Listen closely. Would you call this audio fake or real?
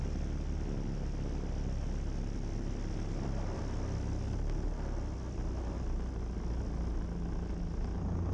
real